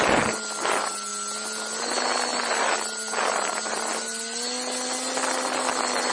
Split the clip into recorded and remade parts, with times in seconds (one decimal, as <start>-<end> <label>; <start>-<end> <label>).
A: 0.0-6.1 recorded